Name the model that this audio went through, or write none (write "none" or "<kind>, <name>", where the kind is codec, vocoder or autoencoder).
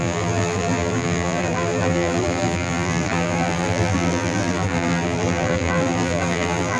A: vocoder, BigVGAN v2